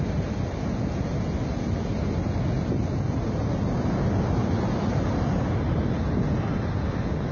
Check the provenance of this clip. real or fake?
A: real